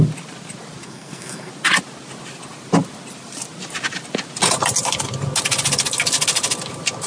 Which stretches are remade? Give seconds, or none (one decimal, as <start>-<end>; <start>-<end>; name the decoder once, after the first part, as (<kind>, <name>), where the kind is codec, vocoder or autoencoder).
0.8-1.5 (codec, SNAC)